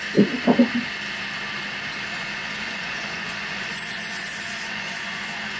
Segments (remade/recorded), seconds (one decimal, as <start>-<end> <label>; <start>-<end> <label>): 0.0-2.1 recorded; 2.1-5.6 remade